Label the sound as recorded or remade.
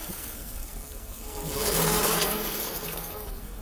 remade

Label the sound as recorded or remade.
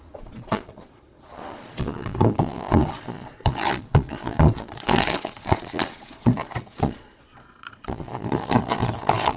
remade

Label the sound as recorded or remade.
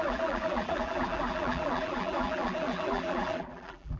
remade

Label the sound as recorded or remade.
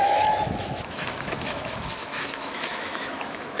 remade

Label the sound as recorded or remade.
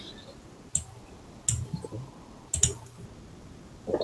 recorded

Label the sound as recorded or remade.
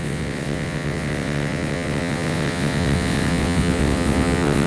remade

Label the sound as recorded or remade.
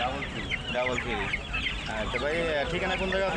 recorded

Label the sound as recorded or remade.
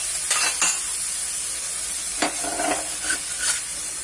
recorded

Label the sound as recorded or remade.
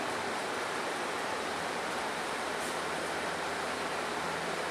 remade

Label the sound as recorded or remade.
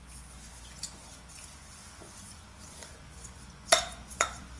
remade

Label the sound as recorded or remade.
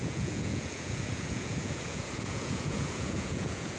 remade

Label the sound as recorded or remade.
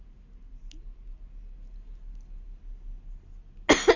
recorded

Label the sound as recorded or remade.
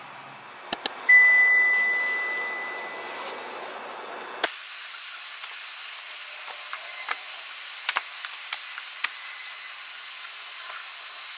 recorded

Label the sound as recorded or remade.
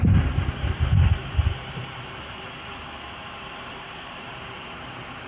remade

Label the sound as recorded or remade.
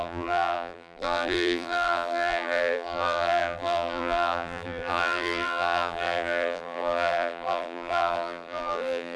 remade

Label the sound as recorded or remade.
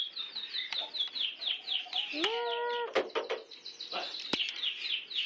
recorded